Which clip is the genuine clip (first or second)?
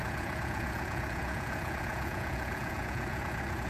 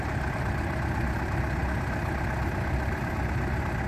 second